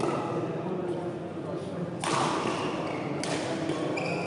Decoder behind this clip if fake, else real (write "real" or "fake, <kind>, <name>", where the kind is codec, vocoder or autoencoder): real